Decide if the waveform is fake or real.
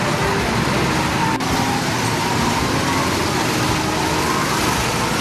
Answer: real